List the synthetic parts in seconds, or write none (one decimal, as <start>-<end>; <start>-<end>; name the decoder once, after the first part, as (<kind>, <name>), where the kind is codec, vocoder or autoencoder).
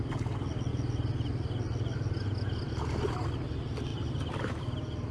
none